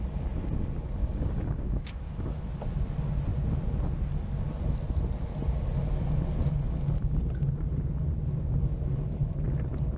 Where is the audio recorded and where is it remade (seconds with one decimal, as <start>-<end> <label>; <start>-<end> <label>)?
0.0-1.0 recorded; 1.0-2.0 remade; 2.0-10.0 recorded